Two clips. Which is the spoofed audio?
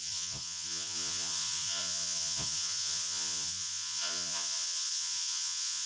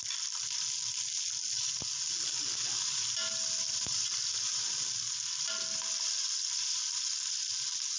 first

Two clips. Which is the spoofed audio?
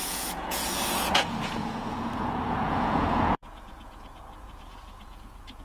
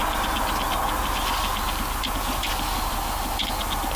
first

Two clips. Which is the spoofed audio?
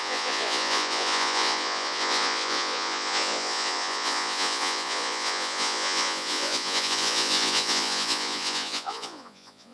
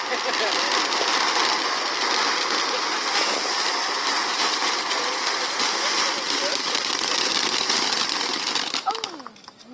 first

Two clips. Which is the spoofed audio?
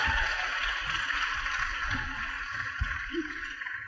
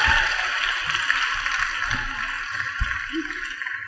first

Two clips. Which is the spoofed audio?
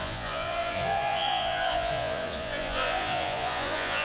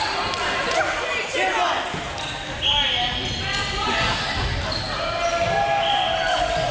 first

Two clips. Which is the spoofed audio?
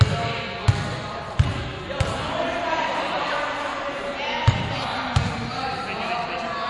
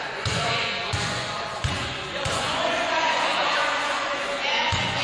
second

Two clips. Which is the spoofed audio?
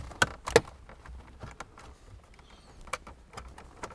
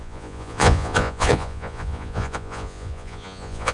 second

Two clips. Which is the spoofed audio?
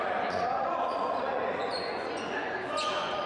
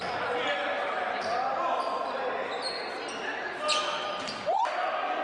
first